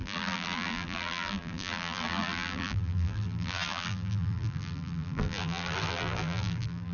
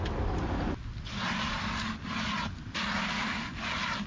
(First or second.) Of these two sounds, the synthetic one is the first